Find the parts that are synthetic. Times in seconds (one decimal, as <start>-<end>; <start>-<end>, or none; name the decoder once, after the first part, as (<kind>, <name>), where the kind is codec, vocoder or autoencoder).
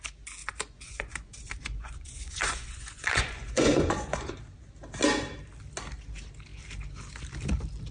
0.4-4.3 (vocoder, Vocos)